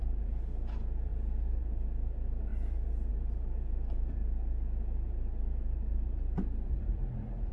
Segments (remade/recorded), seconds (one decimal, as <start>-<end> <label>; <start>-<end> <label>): 0.0-1.1 remade; 1.1-1.6 recorded; 1.6-2.5 remade; 2.5-3.1 recorded; 3.1-4.2 remade; 4.2-5.4 recorded; 5.4-7.5 remade